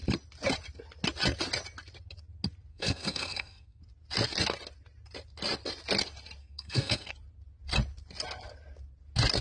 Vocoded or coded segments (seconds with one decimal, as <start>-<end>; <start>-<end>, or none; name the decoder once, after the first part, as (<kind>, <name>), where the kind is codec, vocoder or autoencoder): 2.7-3.8 (codec, SNAC); 6.4-7.1